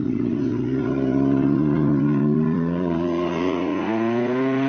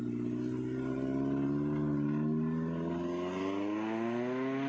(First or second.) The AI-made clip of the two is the first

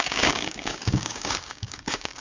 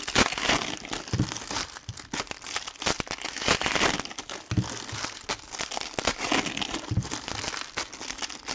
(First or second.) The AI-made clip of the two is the first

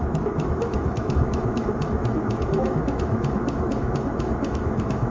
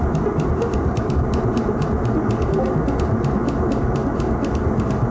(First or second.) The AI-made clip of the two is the first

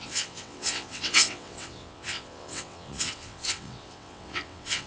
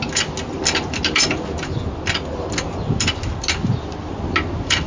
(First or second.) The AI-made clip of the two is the first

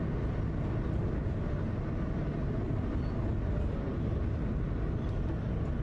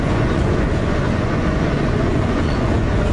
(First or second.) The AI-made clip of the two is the second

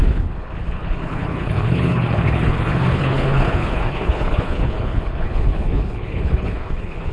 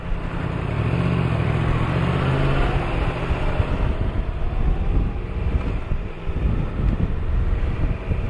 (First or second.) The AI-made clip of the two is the first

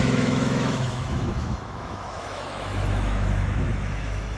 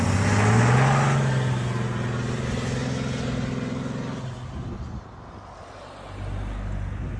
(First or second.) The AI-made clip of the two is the first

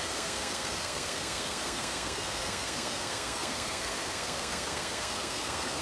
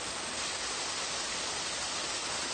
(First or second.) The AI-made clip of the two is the first